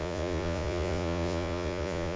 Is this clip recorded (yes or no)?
no